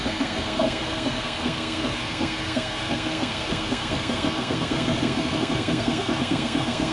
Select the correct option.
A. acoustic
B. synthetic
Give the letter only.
B